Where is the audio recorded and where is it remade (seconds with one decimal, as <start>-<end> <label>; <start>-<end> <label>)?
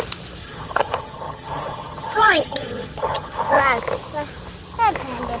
0.0-0.4 recorded; 0.4-3.6 remade; 3.6-5.4 recorded